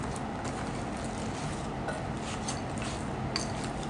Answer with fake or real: real